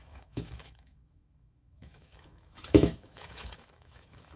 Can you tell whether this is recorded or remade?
remade